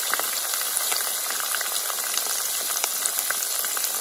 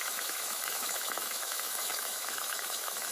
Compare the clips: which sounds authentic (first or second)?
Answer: first